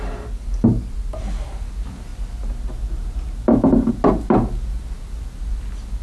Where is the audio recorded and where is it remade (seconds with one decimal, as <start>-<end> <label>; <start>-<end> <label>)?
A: 0.0-6.0 recorded